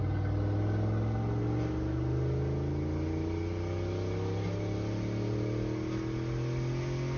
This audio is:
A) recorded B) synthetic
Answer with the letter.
A